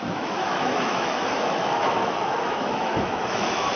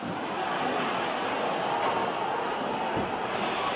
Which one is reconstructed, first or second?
first